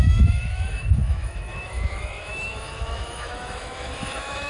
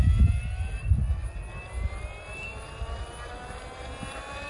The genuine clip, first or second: second